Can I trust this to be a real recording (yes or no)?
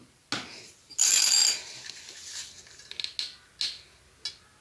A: yes